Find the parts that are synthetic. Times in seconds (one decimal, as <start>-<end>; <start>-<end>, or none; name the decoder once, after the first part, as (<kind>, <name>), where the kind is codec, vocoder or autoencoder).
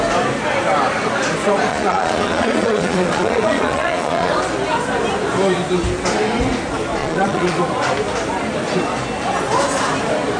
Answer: 1.7-4.3 (vocoder, Vocos); 7.0-7.6